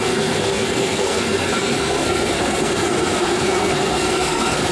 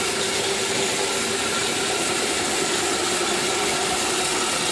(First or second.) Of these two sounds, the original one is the second